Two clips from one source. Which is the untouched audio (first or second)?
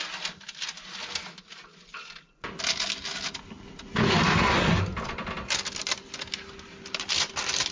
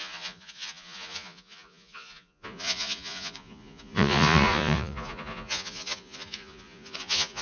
first